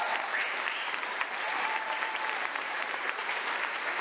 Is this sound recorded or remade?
remade